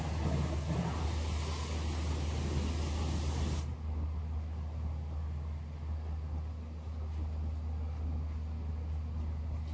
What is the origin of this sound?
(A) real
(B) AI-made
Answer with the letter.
A